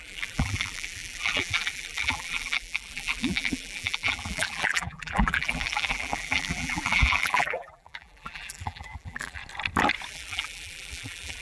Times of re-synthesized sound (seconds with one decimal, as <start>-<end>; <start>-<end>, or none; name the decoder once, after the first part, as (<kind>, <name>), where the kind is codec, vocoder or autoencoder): 0.0-9.4 (vocoder, BigVGAN v2); 10.1-11.4